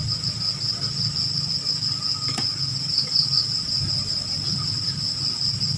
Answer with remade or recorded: recorded